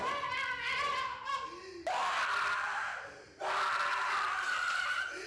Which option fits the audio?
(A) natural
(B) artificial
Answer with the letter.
A